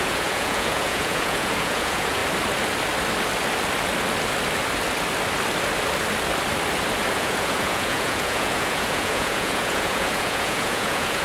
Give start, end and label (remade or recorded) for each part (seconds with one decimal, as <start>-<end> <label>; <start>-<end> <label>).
0.0-2.2 remade; 2.2-7.1 recorded; 7.1-11.2 remade